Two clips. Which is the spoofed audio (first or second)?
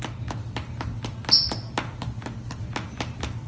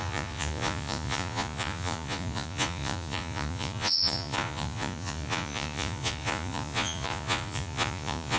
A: second